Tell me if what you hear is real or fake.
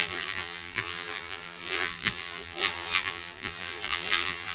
fake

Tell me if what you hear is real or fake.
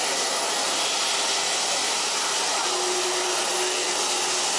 real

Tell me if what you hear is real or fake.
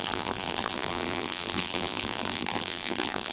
fake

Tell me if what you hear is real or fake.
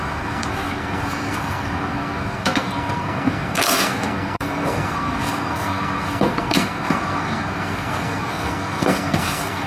fake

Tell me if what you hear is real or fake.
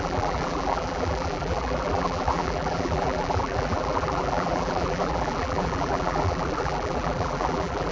fake